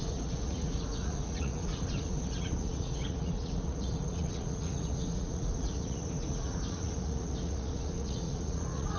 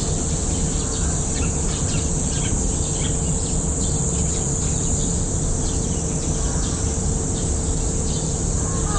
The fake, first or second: first